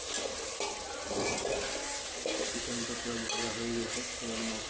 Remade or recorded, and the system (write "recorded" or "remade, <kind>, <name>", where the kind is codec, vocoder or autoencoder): recorded